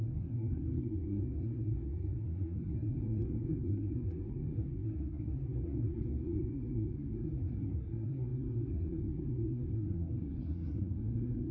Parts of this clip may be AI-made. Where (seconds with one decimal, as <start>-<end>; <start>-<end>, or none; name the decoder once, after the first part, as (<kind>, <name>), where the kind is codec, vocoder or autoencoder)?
0.0-11.5 (codec, SNAC)